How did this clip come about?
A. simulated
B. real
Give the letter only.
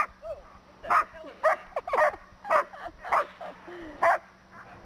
B